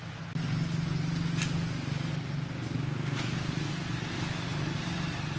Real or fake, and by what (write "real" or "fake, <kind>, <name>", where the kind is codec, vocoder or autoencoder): real